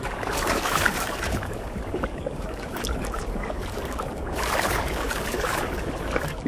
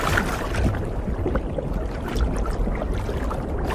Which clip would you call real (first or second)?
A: second